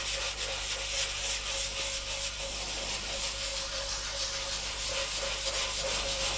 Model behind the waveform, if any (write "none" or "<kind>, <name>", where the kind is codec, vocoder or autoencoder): none